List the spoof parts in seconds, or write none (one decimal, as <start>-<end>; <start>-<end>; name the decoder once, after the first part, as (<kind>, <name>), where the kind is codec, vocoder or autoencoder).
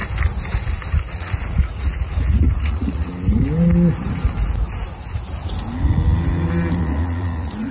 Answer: 1.1-3.1 (vocoder, Vocos); 6.8-7.7